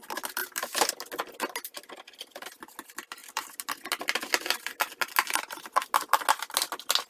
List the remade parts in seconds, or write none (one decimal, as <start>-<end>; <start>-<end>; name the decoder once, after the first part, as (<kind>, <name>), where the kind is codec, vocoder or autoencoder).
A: 0.4-0.9 (vocoder, BigVGAN v2)